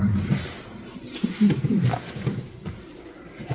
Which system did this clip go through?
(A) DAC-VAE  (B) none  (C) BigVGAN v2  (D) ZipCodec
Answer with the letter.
B